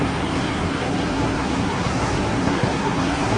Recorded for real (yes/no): no